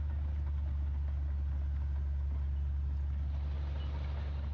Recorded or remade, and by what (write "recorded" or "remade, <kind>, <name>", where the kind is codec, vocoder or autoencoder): recorded